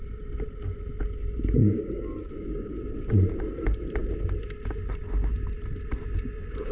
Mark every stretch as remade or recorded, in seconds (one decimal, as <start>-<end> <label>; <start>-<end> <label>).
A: 0.0-1.6 recorded; 1.6-2.8 remade; 2.8-6.7 recorded